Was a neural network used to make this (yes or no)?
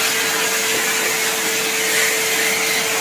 no